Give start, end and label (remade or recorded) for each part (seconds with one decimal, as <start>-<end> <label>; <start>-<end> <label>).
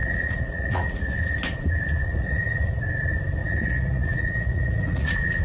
0.0-1.2 remade; 1.2-2.0 recorded; 2.0-2.7 remade; 2.7-3.4 recorded; 3.4-5.4 remade